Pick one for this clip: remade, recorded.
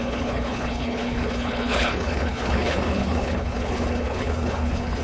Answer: remade